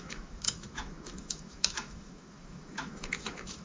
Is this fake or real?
fake